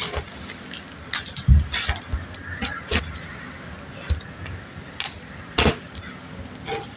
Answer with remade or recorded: recorded